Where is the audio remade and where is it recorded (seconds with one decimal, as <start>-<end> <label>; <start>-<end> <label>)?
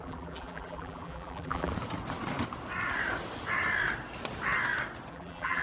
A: 0.0-1.7 remade; 1.7-5.1 recorded; 5.1-5.6 remade